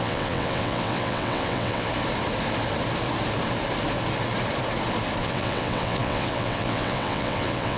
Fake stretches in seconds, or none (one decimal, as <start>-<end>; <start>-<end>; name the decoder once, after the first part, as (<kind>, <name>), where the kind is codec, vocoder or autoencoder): 0.0-1.9 (vocoder, WaveNeXt); 5.2-7.8